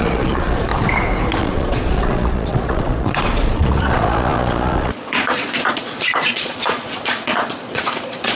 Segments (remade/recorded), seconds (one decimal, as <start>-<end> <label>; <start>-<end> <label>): 0.0-0.7 remade; 0.7-1.4 recorded; 1.4-8.4 remade